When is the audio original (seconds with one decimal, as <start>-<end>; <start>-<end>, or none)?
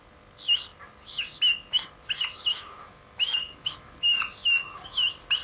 0.0-2.5; 3.9-5.4